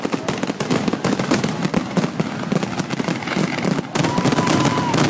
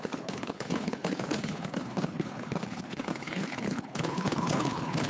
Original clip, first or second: first